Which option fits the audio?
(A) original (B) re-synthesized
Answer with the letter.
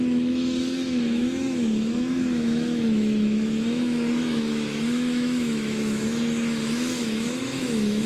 B